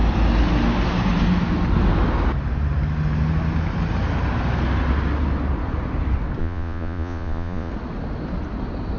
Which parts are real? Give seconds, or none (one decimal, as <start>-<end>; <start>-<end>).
0.0-6.4; 7.7-9.0